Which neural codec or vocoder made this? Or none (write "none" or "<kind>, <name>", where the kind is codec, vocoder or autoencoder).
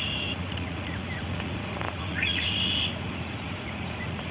vocoder, Vocos